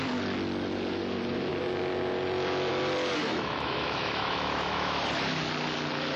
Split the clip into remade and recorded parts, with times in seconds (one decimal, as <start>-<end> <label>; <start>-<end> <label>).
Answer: 0.0-3.2 recorded; 3.2-5.0 remade; 5.0-6.2 recorded